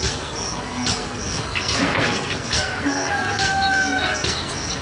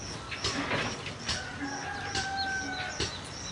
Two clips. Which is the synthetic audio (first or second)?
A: first